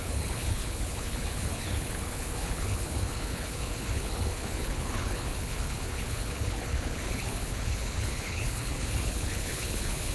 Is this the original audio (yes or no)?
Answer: no